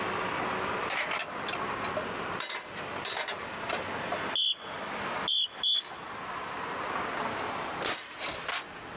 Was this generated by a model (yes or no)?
no